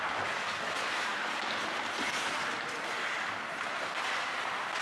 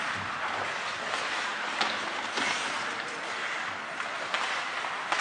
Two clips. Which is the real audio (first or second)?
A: second